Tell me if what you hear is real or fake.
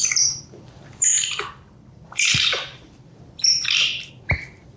fake